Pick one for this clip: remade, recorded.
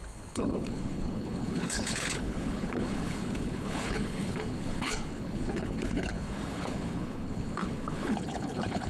remade